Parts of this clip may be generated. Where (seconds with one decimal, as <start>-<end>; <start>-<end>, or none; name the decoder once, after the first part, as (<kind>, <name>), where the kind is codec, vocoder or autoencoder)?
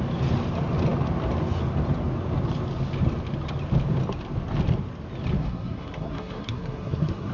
5.4-7.3 (codec, SNAC)